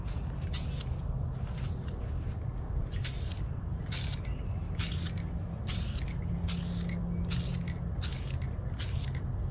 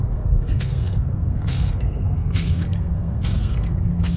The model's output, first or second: second